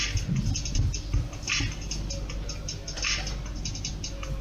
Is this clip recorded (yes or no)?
yes